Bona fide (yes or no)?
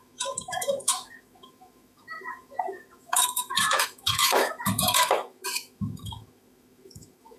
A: no